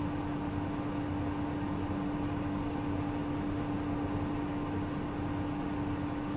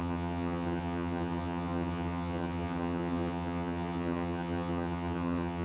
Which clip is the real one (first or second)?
first